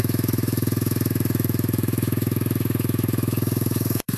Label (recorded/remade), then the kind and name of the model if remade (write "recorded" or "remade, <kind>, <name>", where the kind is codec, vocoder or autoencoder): remade, autoencoder, DAC-VAE